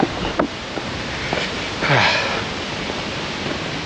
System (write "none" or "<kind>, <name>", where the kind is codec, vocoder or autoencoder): none